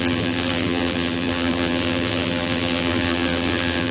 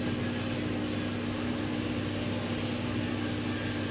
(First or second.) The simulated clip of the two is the first